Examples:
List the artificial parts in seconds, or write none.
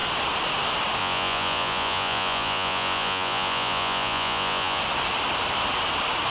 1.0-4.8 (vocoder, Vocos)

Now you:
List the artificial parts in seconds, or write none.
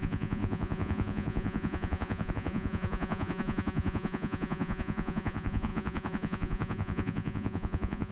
0.0-8.1 (vocoder, Vocos)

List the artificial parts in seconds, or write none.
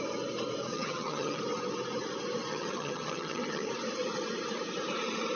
0.7-1.4 (vocoder, HiFi-GAN); 2.5-3.7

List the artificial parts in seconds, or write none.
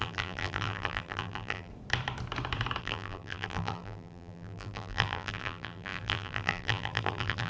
0.0-1.7 (vocoder, BigVGAN v2); 2.8-7.5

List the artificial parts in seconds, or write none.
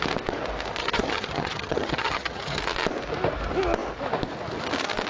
0.8-2.6 (vocoder, HiFi-GAN)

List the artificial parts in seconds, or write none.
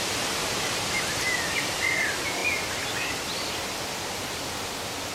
0.4-1.4 (vocoder, BigVGAN v2)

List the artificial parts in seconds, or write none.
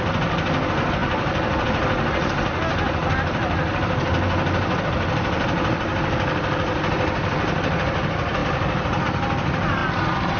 none